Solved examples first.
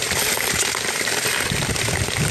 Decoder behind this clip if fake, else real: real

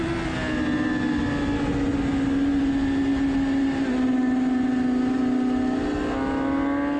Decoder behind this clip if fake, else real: real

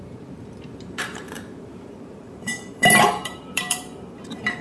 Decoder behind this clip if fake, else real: fake, vocoder, BigVGAN v2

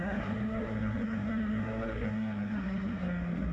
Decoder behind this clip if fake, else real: fake, codec, SNAC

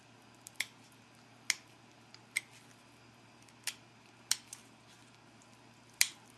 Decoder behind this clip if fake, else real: real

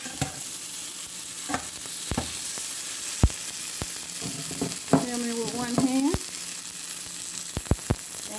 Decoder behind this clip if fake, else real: real